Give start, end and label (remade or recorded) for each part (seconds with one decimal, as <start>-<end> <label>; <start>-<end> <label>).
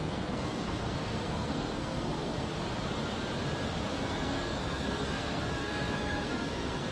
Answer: 0.0-2.5 remade; 2.5-3.9 recorded; 3.9-6.9 remade